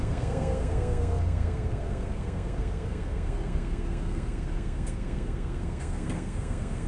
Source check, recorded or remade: remade